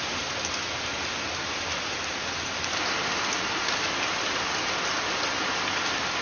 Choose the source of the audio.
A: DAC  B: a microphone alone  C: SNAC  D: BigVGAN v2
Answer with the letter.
B